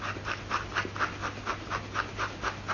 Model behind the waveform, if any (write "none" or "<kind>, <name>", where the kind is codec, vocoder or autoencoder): none